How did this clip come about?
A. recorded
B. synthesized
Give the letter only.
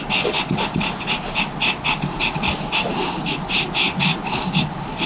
A